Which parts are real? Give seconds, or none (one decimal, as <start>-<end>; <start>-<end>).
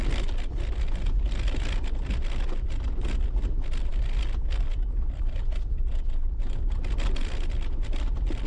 0.0-8.5